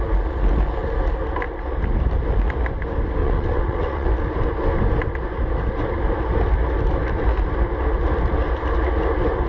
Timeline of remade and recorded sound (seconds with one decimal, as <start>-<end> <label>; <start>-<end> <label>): 0.0-3.2 recorded; 3.2-4.1 remade; 4.1-9.5 recorded